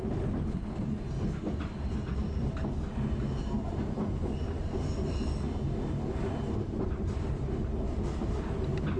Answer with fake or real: real